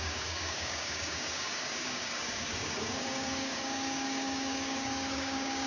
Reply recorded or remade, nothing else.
remade